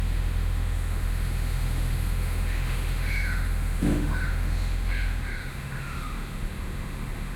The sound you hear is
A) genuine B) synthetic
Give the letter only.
B